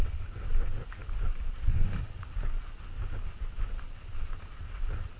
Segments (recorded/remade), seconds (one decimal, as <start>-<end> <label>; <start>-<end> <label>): 0.0-5.2 recorded